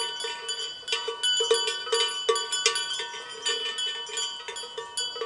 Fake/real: real